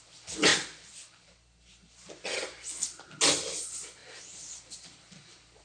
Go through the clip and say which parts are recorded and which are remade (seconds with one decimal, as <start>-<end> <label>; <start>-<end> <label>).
0.0-5.6 recorded